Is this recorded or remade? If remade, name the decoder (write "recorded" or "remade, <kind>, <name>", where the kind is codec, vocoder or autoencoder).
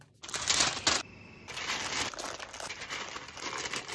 recorded